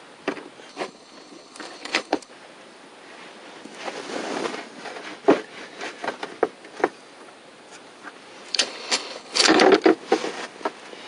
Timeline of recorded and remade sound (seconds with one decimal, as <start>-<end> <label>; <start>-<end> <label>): 0.0-0.7 recorded; 0.7-2.3 remade; 2.3-8.5 recorded; 8.5-9.6 remade; 9.6-11.1 recorded

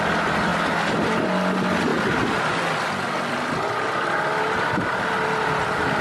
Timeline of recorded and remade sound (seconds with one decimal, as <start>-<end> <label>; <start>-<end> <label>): 0.0-6.0 recorded

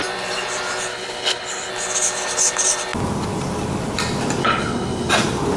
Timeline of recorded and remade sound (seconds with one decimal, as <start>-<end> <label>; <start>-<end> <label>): 0.0-0.9 recorded; 0.9-1.7 remade; 1.7-4.4 recorded; 4.4-5.1 remade; 5.1-5.6 recorded

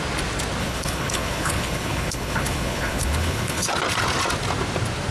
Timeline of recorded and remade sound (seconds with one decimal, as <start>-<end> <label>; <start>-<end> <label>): 0.0-0.6 recorded; 0.6-3.7 remade; 3.7-5.1 recorded

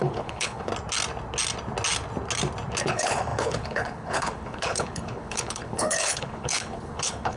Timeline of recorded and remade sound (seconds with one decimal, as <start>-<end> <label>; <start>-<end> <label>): 0.0-0.7 remade; 0.7-2.8 recorded; 2.8-7.4 remade